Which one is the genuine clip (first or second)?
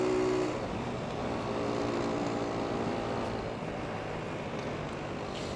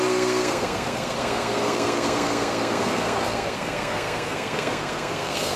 first